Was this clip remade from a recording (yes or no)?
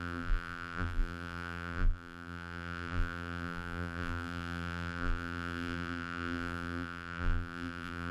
yes